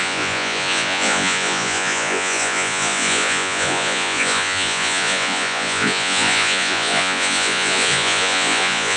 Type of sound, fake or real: fake